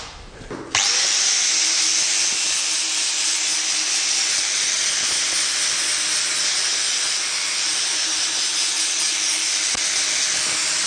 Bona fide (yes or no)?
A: yes